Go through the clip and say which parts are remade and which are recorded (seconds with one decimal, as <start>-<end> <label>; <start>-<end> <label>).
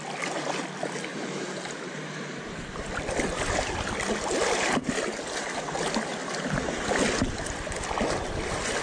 0.0-1.1 recorded; 1.1-2.9 remade; 2.9-8.8 recorded